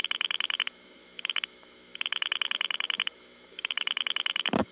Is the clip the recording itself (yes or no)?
no